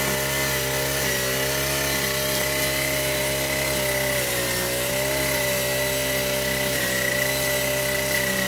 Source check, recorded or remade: recorded